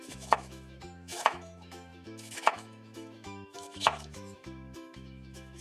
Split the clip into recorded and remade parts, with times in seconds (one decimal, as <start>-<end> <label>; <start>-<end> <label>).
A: 0.0-5.6 remade